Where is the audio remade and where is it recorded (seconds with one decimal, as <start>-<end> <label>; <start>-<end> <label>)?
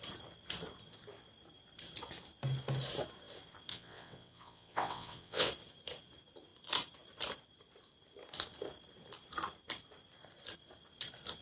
0.0-3.7 recorded; 3.7-5.5 remade; 5.5-11.4 recorded